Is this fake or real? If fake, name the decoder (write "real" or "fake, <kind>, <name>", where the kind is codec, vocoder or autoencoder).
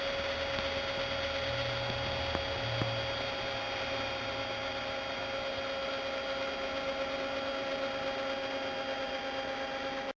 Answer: real